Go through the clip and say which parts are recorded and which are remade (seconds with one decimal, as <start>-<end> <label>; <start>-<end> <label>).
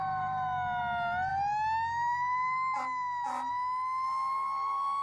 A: 0.0-5.0 recorded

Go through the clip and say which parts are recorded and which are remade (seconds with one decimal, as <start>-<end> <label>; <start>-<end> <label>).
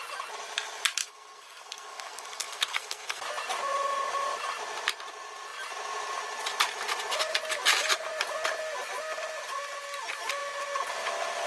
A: 0.0-1.0 recorded; 1.0-3.2 remade; 3.2-11.5 recorded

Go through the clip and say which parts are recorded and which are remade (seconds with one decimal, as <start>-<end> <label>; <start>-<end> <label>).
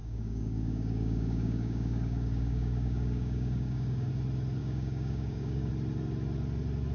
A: 0.0-4.1 remade; 4.1-4.6 recorded; 4.6-5.7 remade; 5.7-6.9 recorded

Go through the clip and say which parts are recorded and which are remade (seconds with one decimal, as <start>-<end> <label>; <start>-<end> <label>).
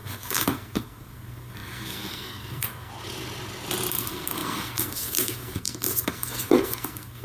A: 0.0-2.9 remade; 2.9-3.9 recorded; 3.9-7.2 remade